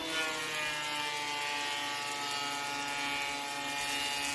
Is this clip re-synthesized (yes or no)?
no